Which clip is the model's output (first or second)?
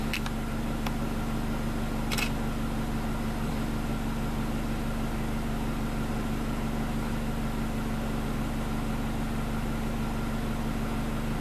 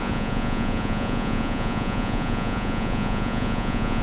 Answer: second